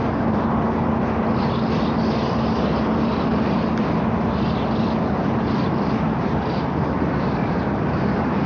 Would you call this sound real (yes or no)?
yes